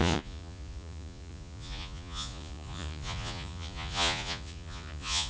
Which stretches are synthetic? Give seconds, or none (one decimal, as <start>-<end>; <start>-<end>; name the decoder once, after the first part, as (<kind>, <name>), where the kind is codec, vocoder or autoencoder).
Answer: 0.0-5.3 (vocoder, Vocos)